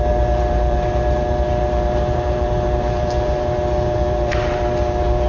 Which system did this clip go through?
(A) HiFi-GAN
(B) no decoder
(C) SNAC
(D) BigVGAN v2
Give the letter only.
D